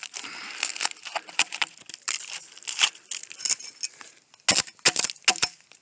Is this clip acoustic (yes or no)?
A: yes